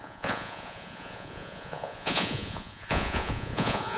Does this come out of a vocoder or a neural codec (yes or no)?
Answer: yes